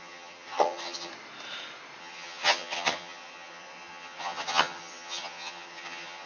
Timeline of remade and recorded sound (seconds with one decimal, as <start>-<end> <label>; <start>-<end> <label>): 0.0-1.1 remade; 1.1-2.0 recorded; 2.0-6.3 remade